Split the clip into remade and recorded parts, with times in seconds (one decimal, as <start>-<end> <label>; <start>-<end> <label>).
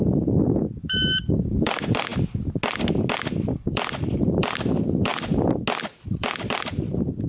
0.0-2.1 remade; 2.1-3.3 recorded; 3.3-5.1 remade; 5.1-6.0 recorded; 6.0-7.3 remade